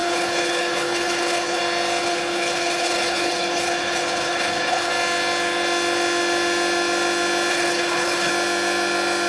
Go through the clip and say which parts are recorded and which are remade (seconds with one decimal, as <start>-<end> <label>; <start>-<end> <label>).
0.0-1.6 remade; 1.6-2.0 recorded; 2.0-4.9 remade; 4.9-7.5 recorded; 7.5-8.3 remade; 8.3-9.3 recorded